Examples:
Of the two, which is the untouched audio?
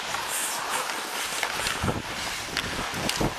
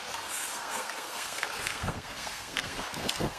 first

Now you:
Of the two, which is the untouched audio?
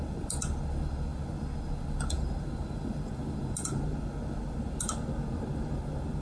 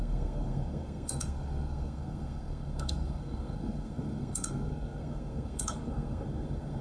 first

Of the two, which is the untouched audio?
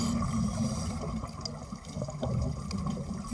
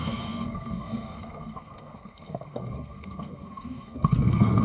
first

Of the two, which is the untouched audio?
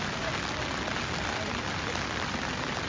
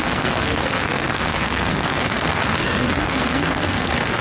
first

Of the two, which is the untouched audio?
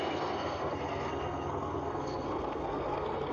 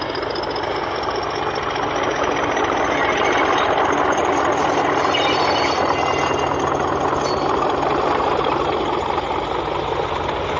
second